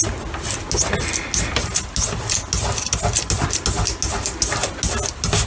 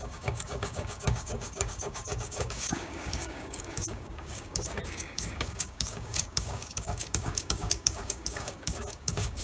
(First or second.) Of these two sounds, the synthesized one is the second